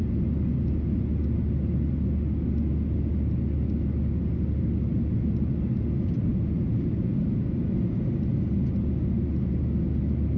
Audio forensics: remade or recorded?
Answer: recorded